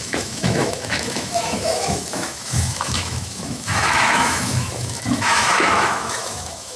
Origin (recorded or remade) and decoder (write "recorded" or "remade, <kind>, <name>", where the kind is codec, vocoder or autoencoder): remade, autoencoder, DAC-VAE